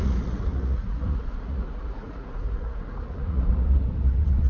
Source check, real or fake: fake